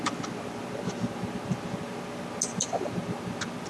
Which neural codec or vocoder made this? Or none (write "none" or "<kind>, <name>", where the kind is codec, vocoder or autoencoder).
none